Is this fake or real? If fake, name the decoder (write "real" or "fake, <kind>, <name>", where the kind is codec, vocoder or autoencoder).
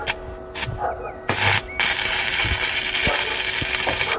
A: real